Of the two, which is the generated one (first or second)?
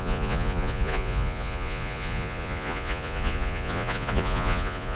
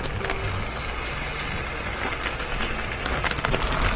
first